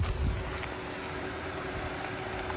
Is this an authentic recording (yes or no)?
yes